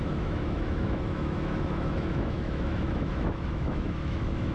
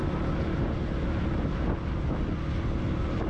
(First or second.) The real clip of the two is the second